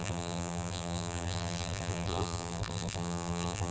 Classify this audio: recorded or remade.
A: remade